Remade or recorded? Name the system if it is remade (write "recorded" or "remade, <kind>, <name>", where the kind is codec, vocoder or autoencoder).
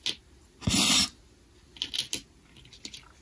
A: recorded